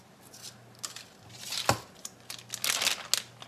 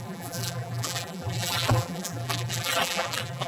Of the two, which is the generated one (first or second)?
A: second